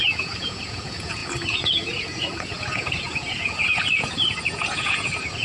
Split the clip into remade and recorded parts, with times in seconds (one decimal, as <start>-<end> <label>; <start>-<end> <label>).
0.0-5.4 remade